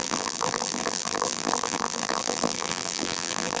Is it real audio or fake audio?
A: fake